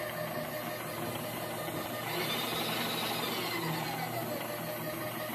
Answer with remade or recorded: recorded